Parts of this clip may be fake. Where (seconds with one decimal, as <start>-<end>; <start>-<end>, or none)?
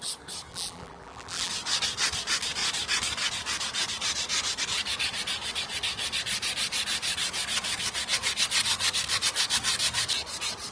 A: 0.5-1.5